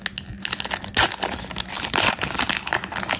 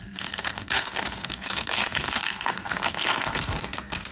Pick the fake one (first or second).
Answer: second